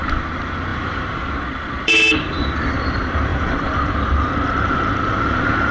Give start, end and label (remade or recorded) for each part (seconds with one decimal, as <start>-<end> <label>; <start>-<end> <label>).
0.0-0.7 recorded; 0.7-2.9 remade; 2.9-3.3 recorded; 3.3-4.3 remade; 4.3-5.7 recorded